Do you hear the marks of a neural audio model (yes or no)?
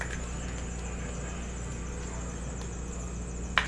no